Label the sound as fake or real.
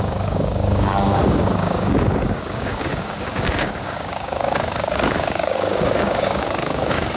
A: fake